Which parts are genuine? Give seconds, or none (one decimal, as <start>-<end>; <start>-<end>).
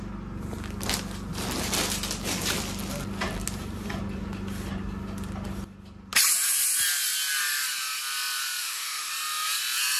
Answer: 0.0-8.6; 9.1-10.0